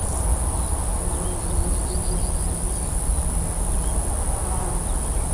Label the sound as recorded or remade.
recorded